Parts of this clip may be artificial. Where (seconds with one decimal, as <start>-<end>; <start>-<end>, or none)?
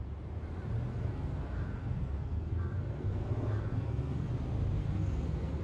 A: 0.9-4.3; 4.8-5.6